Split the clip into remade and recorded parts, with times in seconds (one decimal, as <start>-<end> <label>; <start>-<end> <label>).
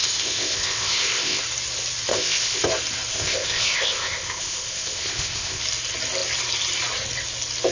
0.0-1.4 remade; 1.4-2.1 recorded; 2.1-2.7 remade; 2.7-3.1 recorded; 3.1-5.6 remade; 5.6-7.7 recorded